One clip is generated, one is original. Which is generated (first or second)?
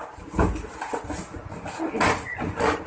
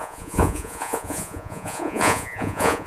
second